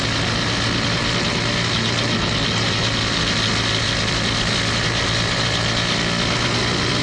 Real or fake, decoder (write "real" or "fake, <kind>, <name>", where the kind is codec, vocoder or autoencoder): real